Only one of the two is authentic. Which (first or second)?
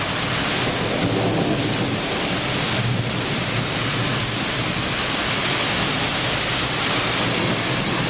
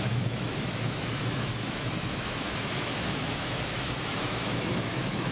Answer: first